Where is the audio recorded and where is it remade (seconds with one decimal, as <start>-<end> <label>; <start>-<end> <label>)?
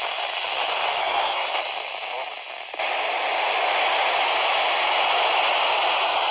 0.0-1.0 recorded; 1.0-1.5 remade; 1.5-6.3 recorded